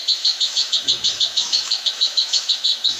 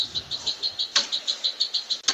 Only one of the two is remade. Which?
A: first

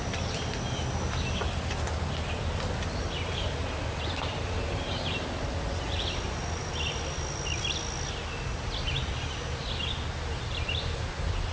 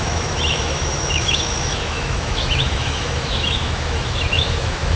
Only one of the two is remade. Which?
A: second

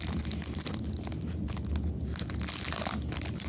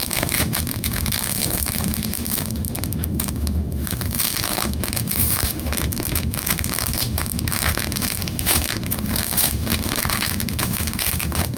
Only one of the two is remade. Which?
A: second